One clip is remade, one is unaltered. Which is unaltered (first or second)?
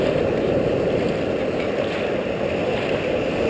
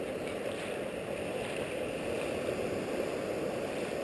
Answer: first